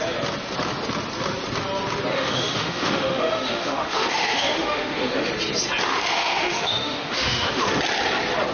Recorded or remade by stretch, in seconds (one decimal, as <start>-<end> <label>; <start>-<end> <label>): 0.0-2.1 recorded; 2.1-5.3 remade; 5.3-5.9 recorded; 5.9-7.8 remade; 7.8-8.5 recorded